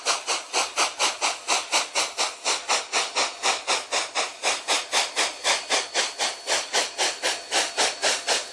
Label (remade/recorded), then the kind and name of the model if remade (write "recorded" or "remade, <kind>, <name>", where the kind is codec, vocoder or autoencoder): recorded